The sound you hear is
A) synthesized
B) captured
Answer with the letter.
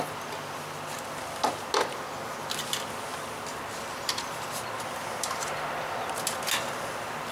B